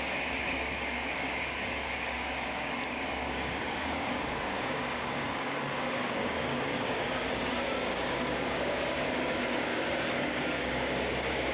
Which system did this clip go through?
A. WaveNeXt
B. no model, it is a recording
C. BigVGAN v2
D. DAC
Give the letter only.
D